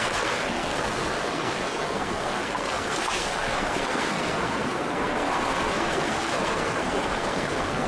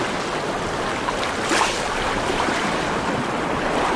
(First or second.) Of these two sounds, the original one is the second